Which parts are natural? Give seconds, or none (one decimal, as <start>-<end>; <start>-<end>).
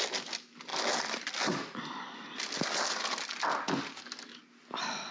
0.0-5.1